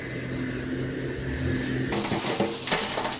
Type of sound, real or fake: real